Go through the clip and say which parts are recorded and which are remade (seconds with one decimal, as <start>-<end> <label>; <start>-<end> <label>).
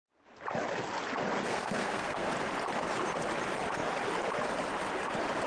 0.0-1.4 recorded; 1.4-2.3 remade; 2.3-5.5 recorded